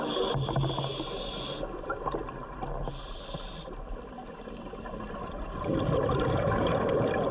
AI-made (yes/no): no